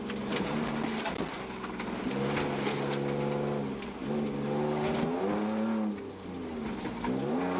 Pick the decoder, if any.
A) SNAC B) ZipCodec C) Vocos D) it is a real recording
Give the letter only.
D